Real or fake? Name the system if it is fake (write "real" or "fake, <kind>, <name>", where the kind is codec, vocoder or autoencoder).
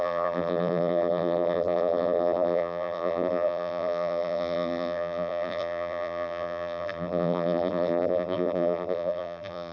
fake, vocoder, BigVGAN v2